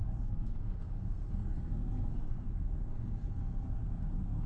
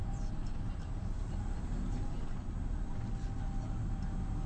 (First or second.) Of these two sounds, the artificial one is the first